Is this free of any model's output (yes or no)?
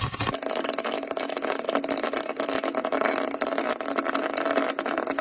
yes